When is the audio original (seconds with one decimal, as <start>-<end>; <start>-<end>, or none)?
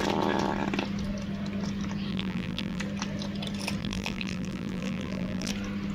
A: 0.0-2.1; 2.8-3.8; 5.5-5.9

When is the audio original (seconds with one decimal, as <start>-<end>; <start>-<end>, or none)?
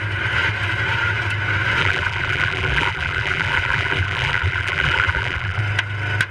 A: 0.0-1.8; 5.6-6.3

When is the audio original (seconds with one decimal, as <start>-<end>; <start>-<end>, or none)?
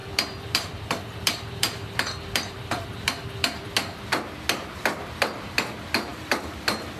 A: 3.7-6.1